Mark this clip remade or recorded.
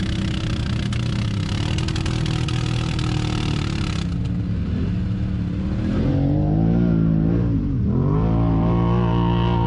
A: recorded